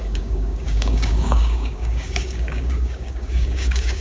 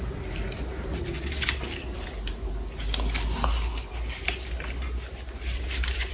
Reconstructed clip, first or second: first